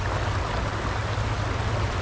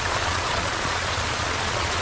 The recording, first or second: first